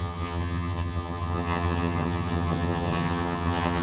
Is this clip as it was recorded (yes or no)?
no